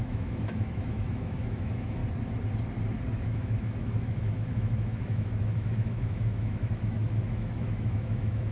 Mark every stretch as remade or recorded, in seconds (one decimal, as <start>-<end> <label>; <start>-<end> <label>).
0.0-2.0 remade; 2.0-3.2 recorded; 3.2-8.5 remade